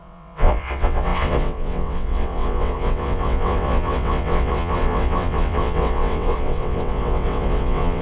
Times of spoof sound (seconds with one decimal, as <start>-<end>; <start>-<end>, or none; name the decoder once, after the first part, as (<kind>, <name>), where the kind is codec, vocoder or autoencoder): 0.0-8.0 (vocoder, WaveNeXt)